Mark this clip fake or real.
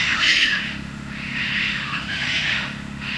fake